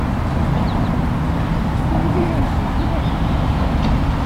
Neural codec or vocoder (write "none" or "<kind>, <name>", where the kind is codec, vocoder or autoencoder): none